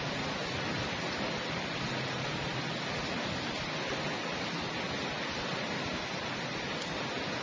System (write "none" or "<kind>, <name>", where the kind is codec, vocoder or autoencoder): none